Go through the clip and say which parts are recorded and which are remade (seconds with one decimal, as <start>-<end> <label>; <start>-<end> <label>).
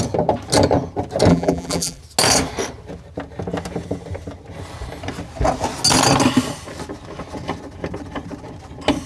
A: 0.0-1.3 recorded; 1.3-2.0 remade; 2.0-9.1 recorded